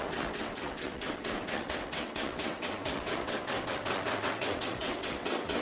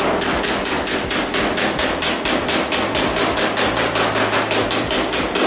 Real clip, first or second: second